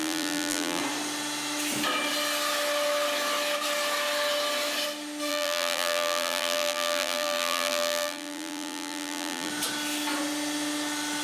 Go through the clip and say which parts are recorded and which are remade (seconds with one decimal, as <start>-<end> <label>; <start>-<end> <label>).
0.0-0.8 remade; 0.8-5.3 recorded; 5.3-9.5 remade; 9.5-11.2 recorded